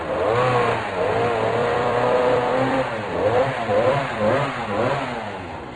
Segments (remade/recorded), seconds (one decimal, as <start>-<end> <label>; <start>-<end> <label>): 0.0-1.6 recorded; 1.6-4.3 remade; 4.3-5.8 recorded